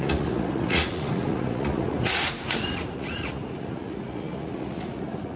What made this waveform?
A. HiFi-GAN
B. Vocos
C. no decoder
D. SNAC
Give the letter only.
B